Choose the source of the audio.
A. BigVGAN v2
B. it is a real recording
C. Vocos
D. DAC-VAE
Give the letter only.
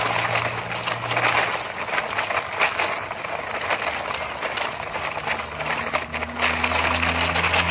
B